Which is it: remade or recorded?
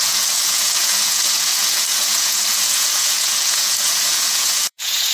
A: remade